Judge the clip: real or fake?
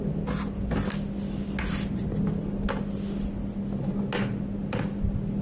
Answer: real